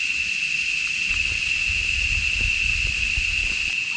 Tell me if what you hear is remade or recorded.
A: recorded